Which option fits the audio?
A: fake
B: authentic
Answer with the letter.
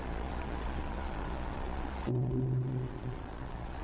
A